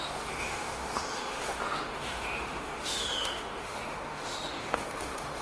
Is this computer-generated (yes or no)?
yes